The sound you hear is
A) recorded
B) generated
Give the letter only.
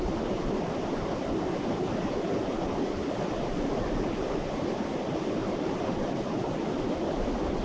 A